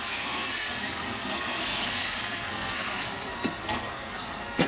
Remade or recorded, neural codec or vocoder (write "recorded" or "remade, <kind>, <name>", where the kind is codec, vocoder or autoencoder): remade, codec, SNAC